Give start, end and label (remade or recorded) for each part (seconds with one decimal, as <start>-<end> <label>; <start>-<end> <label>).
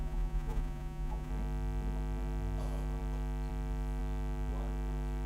0.0-1.3 remade; 1.3-5.3 recorded